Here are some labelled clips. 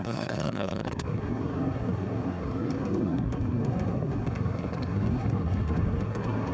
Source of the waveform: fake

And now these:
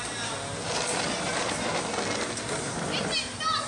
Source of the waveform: real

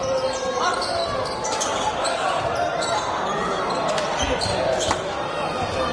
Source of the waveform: fake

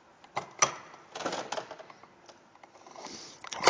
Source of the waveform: real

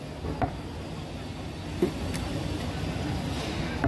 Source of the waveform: real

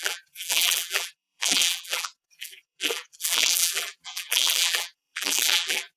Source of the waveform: fake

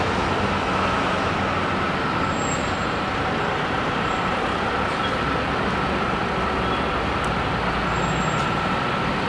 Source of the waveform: real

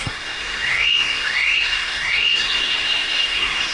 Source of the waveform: fake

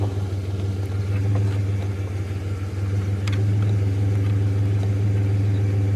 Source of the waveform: real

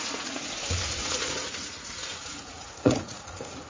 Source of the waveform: fake